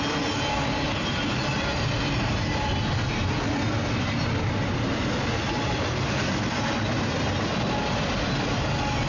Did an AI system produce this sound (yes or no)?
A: no